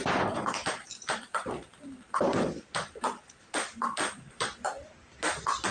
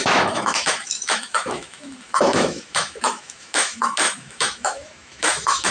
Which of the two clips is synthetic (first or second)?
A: second